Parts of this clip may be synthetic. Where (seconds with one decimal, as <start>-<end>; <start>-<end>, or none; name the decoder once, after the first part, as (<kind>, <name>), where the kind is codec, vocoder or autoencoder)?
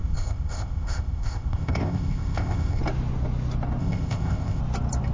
0.0-2.8 (codec, ZipCodec); 3.8-4.6